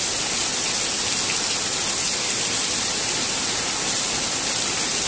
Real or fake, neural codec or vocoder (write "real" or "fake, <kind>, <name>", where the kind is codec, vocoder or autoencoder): real